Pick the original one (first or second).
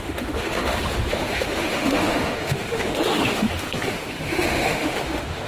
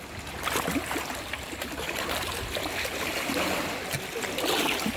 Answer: second